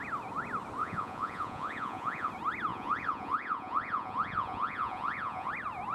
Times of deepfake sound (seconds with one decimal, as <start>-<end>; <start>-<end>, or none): 0.8-2.3; 2.7-5.5